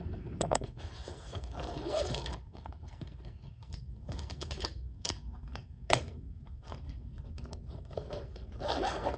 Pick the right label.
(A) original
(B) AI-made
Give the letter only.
B